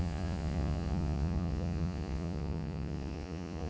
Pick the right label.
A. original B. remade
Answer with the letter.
B